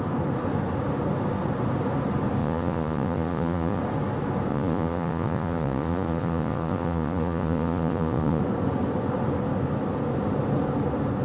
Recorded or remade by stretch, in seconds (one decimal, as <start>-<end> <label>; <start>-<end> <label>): 0.0-2.4 recorded; 2.4-3.8 remade; 3.8-4.5 recorded; 4.5-8.4 remade; 8.4-11.2 recorded